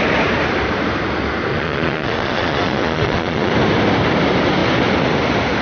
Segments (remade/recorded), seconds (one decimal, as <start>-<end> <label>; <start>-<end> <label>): 0.0-1.5 recorded; 1.5-3.5 remade; 3.5-5.6 recorded